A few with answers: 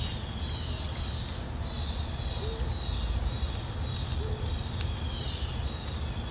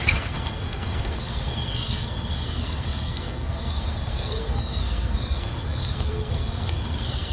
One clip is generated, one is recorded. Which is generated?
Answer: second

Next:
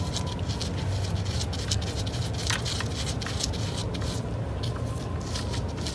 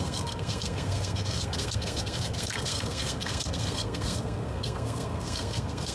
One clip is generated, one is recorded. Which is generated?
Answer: second